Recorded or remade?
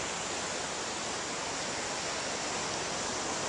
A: recorded